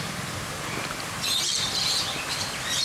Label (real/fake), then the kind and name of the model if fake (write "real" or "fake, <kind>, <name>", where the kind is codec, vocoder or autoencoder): fake, vocoder, BigVGAN v2